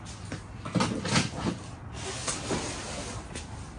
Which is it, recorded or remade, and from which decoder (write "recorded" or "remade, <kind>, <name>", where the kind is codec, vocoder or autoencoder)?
recorded